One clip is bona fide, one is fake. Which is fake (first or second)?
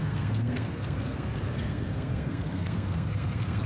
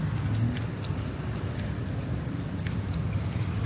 first